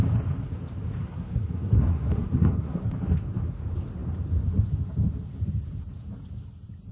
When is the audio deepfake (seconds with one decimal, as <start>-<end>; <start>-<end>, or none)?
1.0-2.8